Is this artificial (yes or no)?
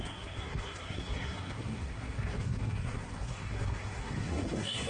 yes